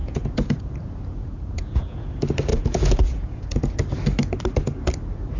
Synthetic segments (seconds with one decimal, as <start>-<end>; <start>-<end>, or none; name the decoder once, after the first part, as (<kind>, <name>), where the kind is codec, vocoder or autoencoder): 0.0-0.6 (vocoder, Vocos); 1.3-2.1; 2.5-3.6